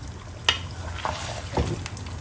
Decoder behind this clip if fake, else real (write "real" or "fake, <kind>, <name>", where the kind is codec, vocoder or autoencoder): real